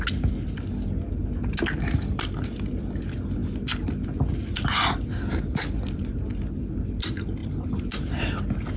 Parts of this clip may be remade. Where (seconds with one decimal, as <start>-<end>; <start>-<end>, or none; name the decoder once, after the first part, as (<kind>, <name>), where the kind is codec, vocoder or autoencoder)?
none